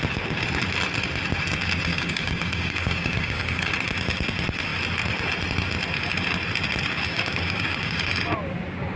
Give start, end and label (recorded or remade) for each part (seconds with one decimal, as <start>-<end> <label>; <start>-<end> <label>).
0.0-1.9 recorded; 1.9-3.7 remade; 3.7-7.1 recorded; 7.1-8.1 remade; 8.1-9.0 recorded